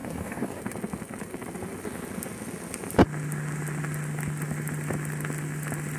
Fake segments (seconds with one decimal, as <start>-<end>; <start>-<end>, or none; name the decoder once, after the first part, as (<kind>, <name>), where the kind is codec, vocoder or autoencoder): 0.0-0.6 (codec, DAC)